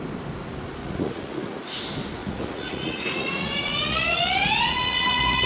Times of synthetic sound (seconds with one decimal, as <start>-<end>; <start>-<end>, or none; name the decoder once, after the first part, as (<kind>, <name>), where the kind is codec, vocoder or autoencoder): 0.8-1.6 (vocoder, Vocos); 2.2-5.5